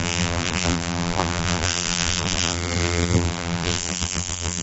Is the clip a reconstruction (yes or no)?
yes